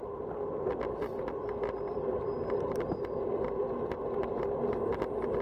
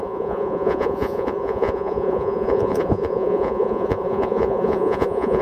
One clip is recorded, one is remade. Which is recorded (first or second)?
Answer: first